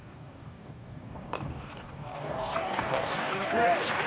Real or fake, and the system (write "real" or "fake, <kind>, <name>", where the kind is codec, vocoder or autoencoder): fake, codec, DAC